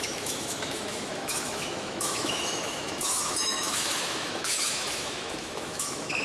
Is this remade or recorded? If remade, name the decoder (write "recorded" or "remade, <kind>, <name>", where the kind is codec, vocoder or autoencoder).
remade, autoencoder, DAC-VAE